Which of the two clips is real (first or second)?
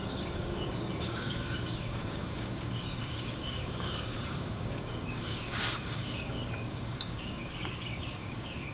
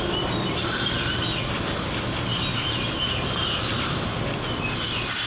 second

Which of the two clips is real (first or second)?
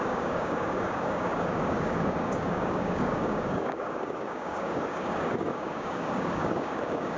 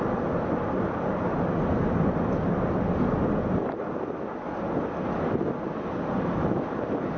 second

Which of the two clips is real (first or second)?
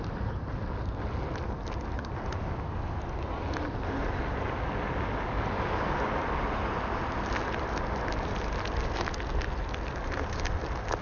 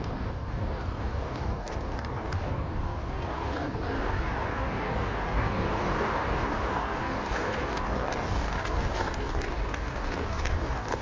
first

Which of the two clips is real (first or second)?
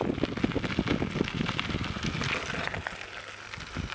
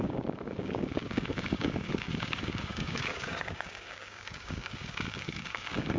first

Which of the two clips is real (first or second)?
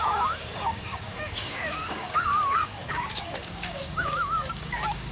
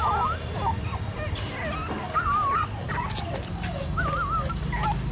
second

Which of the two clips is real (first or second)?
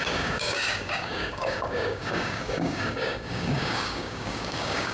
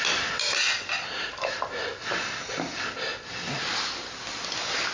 second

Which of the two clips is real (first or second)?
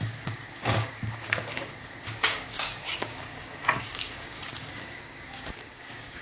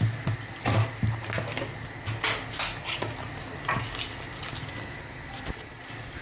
second